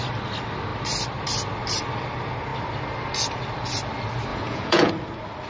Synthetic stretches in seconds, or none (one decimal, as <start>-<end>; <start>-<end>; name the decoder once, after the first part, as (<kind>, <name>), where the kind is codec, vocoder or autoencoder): 4.3-4.9 (vocoder, Vocos)